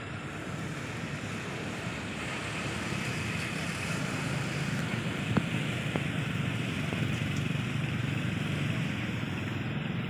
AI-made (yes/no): no